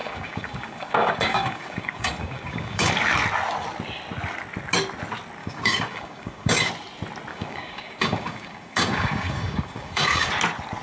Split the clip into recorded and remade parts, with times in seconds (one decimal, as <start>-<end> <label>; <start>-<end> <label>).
0.0-2.9 remade; 2.9-5.4 recorded; 5.4-6.7 remade; 6.7-7.3 recorded; 7.3-10.3 remade; 10.3-10.8 recorded